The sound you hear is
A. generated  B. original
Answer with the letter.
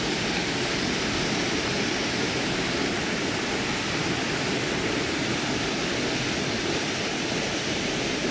B